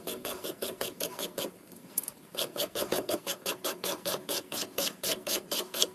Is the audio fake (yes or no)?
yes